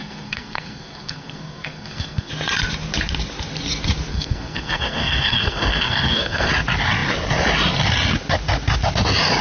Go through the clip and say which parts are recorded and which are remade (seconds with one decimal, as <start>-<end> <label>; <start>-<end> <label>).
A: 0.0-2.3 remade; 2.3-4.1 recorded; 4.1-6.5 remade; 6.5-9.4 recorded